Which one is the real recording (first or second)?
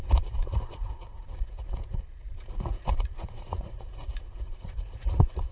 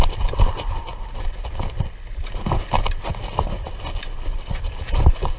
second